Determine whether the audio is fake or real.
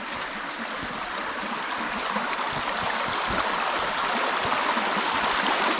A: real